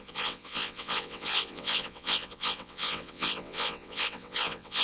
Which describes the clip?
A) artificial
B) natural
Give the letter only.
A